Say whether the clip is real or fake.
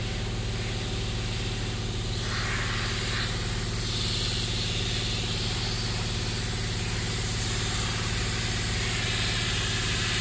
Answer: real